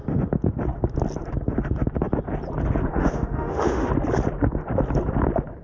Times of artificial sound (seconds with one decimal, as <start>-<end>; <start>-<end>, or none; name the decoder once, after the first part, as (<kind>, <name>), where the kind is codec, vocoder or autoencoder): 2.9-3.9 (autoencoder, DAC-VAE)